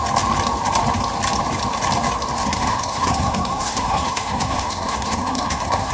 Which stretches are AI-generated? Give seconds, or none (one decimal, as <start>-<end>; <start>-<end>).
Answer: 2.4-5.9